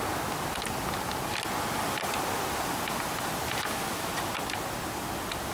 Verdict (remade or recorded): recorded